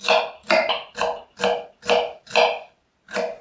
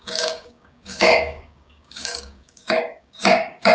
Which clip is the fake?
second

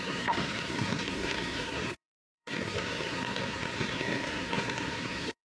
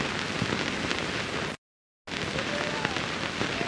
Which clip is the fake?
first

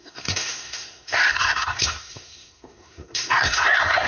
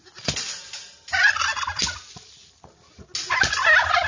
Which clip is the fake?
first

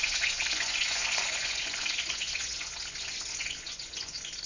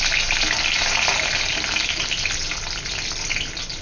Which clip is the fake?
first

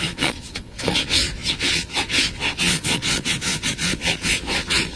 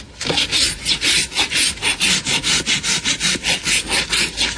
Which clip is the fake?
first